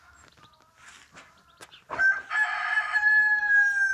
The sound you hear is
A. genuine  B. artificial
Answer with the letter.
A